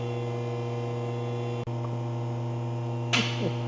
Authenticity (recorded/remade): recorded